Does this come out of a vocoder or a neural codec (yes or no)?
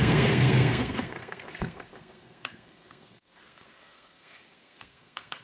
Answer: yes